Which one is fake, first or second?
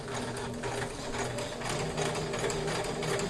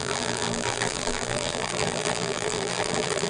second